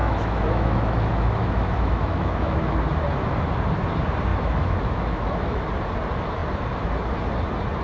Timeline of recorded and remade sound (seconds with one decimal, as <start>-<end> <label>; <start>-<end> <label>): 0.0-2.8 remade; 2.8-4.3 recorded; 4.3-5.6 remade; 5.6-7.8 recorded